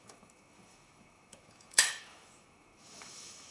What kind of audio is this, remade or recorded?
remade